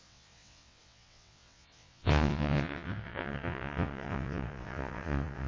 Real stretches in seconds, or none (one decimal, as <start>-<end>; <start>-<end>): none